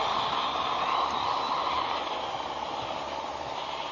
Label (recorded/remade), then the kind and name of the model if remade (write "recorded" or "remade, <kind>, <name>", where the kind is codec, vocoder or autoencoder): recorded